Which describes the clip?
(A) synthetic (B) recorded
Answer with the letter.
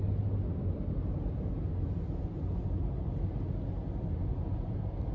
B